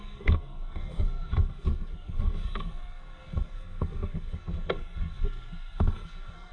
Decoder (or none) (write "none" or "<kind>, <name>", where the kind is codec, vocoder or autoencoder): codec, SNAC